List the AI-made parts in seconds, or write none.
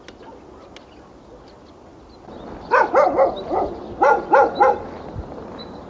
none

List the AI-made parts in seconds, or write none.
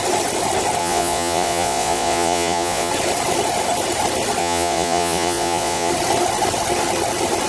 0.8-2.9 (vocoder, Vocos); 4.4-5.9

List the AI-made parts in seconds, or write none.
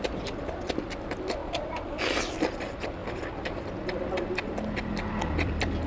none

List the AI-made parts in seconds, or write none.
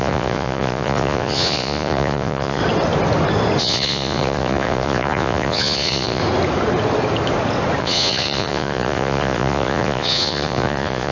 0.0-2.6 (vocoder, Vocos); 3.6-6.2; 7.8-11.1